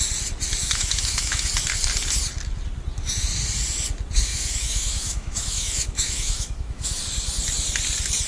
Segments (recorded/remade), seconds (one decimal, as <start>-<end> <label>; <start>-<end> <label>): 0.0-0.6 recorded; 0.6-1.5 remade; 1.5-4.3 recorded; 4.3-7.0 remade; 7.0-8.3 recorded